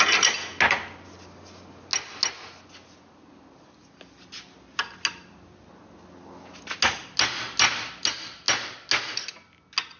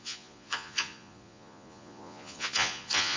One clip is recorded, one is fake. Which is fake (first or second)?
second